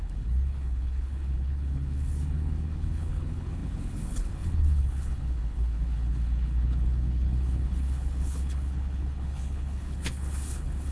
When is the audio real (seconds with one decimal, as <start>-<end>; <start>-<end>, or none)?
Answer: none